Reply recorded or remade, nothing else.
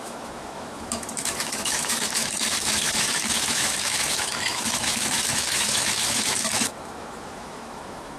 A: remade